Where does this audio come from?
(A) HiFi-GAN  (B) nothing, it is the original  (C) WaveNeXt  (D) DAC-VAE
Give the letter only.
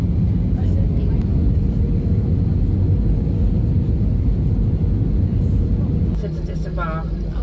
B